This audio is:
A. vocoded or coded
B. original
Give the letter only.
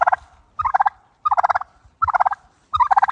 B